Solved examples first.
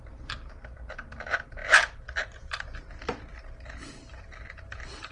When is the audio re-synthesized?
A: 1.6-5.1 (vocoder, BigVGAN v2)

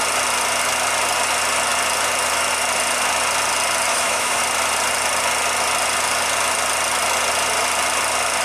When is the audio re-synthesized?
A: 3.9-4.4 (autoencoder, DAC-VAE)

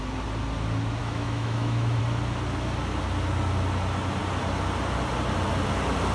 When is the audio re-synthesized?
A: 1.0-2.0 (autoencoder, DAC-VAE)

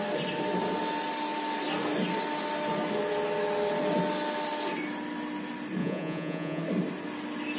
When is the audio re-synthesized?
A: 5.8-6.6 (vocoder, Vocos)

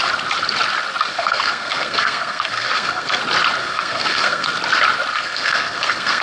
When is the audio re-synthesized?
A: 1.1-3.2 (codec, SNAC); 3.6-4.5; 5.1-6.2

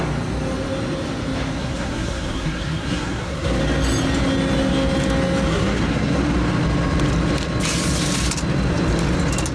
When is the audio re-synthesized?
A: 1.6-3.6 (codec, SNAC); 5.5-6.2

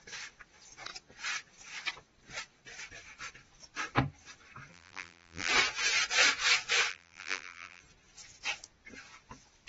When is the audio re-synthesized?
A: 4.7-5.5 (vocoder, BigVGAN v2); 6.9-7.8

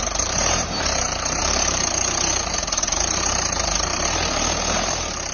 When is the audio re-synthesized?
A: 0.0-3.9 (vocoder, BigVGAN v2); 4.6-5.3